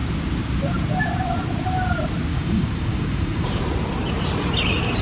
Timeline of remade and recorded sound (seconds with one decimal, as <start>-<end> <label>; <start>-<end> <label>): 0.0-2.3 recorded; 2.3-3.6 remade; 3.6-5.0 recorded